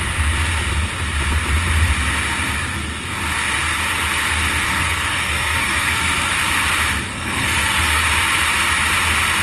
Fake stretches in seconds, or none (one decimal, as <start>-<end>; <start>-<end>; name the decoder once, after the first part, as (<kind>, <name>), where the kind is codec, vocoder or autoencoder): 4.7-6.3 (codec, SNAC); 7.1-8.0